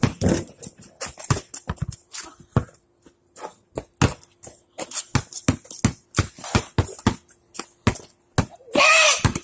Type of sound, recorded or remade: recorded